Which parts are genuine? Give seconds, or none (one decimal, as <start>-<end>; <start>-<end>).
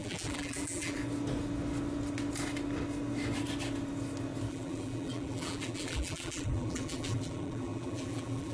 1.0-4.5